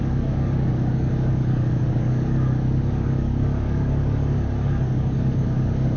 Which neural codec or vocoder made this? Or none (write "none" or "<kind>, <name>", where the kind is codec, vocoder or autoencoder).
codec, DAC